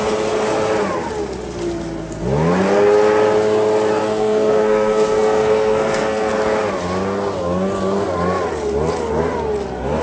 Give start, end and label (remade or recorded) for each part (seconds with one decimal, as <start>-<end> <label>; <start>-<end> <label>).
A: 0.0-4.0 recorded; 4.0-6.3 remade; 6.3-10.0 recorded